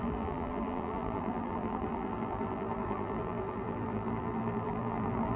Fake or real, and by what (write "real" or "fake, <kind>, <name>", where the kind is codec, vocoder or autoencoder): fake, vocoder, BigVGAN v2